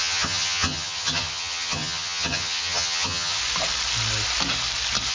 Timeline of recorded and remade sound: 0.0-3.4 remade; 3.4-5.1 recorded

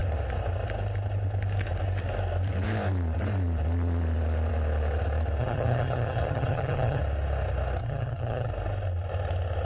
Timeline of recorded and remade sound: 0.0-5.4 recorded; 5.4-7.0 remade; 7.0-7.8 recorded; 7.8-8.5 remade; 8.5-9.6 recorded

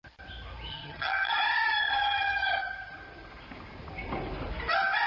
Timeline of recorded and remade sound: 0.0-0.7 recorded; 0.7-1.3 remade; 1.3-1.8 recorded; 1.8-2.6 remade; 2.6-5.1 recorded

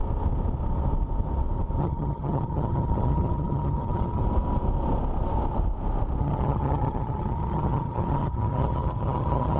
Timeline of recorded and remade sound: 0.0-1.8 recorded; 1.8-4.2 remade; 4.2-6.2 recorded; 6.2-9.6 remade

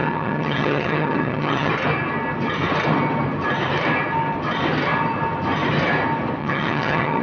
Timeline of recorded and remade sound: 0.0-1.7 remade; 1.7-6.4 recorded; 6.4-7.2 remade

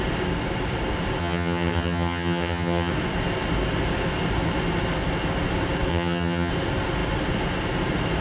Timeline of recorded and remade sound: 0.0-1.2 recorded; 1.2-2.9 remade; 2.9-5.9 recorded; 5.9-6.5 remade; 6.5-8.2 recorded

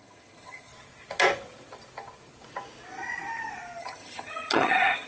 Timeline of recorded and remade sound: 0.0-0.7 remade; 0.7-3.8 recorded; 3.8-5.1 remade

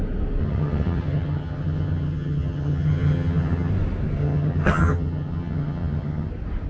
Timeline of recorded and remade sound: 0.0-0.4 recorded; 0.4-3.7 remade; 3.7-4.2 recorded; 4.2-6.3 remade; 6.3-6.7 recorded